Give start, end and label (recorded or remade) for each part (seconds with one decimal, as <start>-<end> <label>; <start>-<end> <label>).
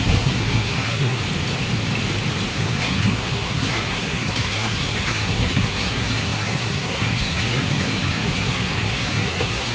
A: 0.0-1.2 remade; 1.2-2.5 recorded; 2.5-9.7 remade